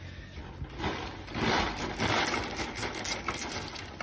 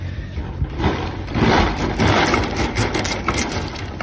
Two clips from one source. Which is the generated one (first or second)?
second